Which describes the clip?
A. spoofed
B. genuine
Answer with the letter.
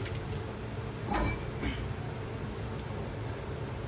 A